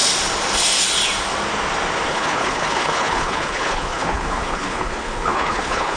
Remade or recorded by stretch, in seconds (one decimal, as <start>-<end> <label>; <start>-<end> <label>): 0.0-2.1 recorded; 2.1-6.0 remade